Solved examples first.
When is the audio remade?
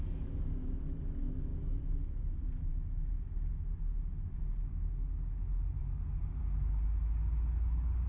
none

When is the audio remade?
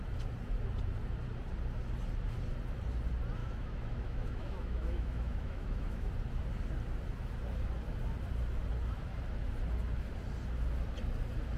3.4-6.1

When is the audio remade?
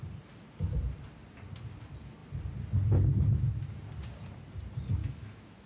5.0-5.7